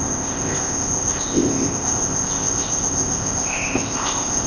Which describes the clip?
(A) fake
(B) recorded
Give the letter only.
A